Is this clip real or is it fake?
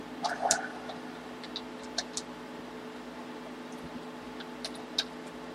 real